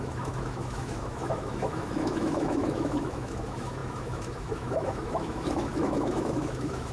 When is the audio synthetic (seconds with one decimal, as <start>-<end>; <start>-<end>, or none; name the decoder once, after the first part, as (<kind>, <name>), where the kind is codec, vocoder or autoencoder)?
0.0-6.9 (autoencoder, DAC-VAE)